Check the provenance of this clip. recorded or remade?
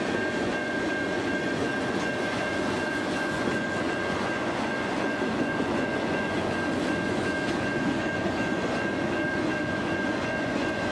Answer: remade